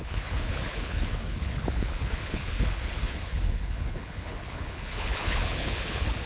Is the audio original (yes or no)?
no